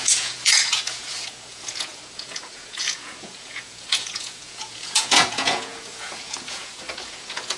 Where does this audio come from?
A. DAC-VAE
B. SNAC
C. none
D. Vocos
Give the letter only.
D